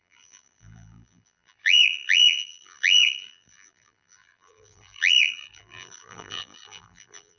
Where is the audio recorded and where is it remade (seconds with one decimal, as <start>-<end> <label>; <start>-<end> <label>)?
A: 0.0-7.4 remade